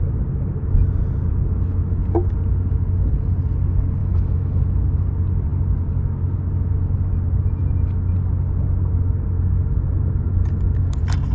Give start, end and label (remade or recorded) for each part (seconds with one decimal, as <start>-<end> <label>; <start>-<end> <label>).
0.0-4.0 recorded; 4.0-4.6 remade; 4.6-11.3 recorded